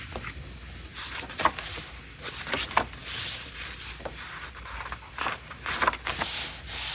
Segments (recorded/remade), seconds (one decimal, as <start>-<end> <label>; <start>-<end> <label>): 0.0-6.9 recorded